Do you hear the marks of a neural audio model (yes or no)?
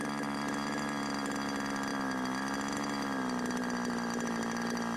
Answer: no